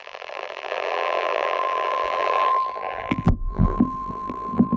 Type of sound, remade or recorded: remade